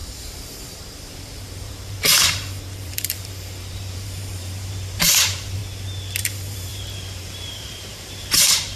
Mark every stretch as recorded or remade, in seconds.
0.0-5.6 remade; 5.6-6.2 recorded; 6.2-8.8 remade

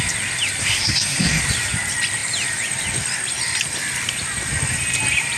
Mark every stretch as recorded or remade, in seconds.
0.0-0.6 recorded; 0.6-1.4 remade; 1.4-5.4 recorded

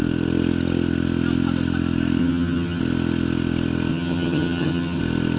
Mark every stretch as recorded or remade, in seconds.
0.0-2.2 recorded; 2.2-2.8 remade; 2.8-3.9 recorded; 3.9-5.0 remade; 5.0-5.4 recorded

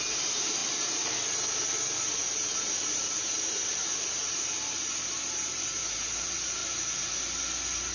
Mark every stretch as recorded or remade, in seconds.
0.0-0.6 remade; 0.6-2.0 recorded; 2.0-6.6 remade; 6.6-7.9 recorded

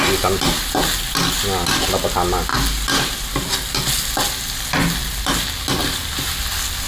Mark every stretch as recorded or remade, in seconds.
0.0-6.9 recorded

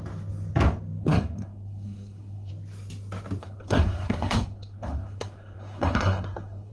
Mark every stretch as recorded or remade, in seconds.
0.0-1.0 recorded; 1.0-2.5 remade; 2.5-3.4 recorded; 3.4-6.7 remade